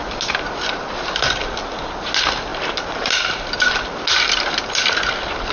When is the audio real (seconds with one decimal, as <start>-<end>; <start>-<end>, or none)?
0.0-5.5